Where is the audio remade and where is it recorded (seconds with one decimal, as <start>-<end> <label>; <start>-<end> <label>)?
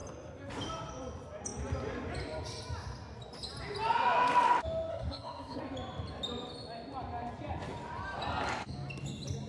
0.0-4.9 recorded; 4.9-5.6 remade; 5.6-9.5 recorded